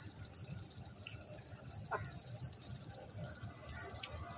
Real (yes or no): yes